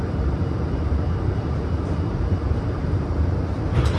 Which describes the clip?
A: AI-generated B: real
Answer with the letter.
A